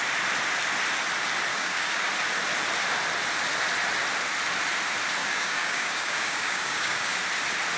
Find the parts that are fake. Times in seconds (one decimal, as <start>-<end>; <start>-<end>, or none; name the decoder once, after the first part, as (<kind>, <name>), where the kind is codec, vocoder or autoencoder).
1.5-2.1 (codec, DAC); 5.2-7.2